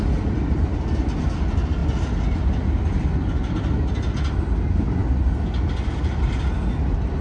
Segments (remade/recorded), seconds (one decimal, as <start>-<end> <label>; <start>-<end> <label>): 0.0-7.2 recorded